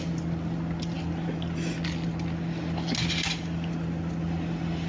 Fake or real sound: real